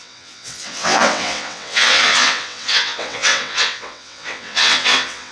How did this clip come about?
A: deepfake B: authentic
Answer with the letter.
A